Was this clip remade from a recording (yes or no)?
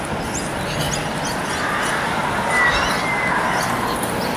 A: no